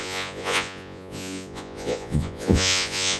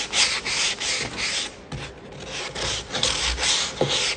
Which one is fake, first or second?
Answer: first